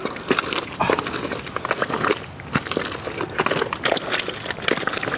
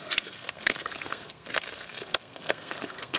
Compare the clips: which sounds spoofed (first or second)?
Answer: second